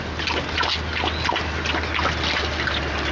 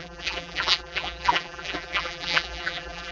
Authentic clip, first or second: first